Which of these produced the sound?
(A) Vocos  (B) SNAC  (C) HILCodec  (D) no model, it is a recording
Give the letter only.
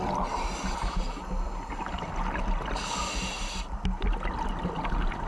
D